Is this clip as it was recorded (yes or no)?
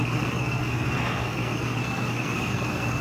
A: no